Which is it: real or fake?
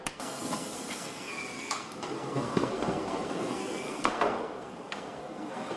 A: fake